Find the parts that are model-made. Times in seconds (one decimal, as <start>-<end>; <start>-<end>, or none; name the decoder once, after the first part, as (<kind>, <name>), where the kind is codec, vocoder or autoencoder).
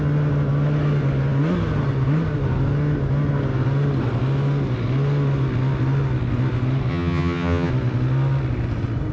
6.9-7.7 (vocoder, HiFi-GAN)